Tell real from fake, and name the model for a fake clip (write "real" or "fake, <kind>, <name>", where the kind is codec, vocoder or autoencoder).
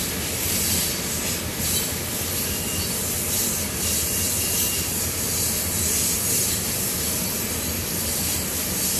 real